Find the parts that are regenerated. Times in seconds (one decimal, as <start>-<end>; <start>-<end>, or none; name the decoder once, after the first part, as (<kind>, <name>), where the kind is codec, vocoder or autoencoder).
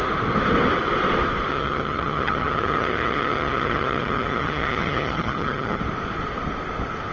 1.5-5.8 (vocoder, HiFi-GAN)